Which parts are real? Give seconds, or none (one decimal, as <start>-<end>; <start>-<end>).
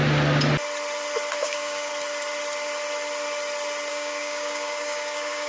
0.0-1.4; 1.9-3.9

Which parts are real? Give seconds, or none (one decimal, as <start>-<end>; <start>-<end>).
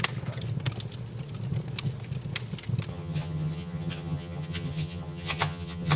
0.0-2.9